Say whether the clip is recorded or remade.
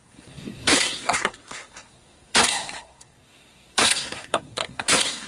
remade